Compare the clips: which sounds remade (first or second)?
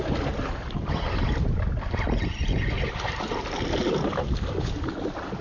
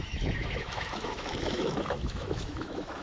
second